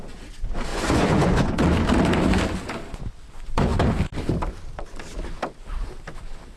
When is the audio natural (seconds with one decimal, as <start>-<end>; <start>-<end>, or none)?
0.0-0.7; 1.6-6.6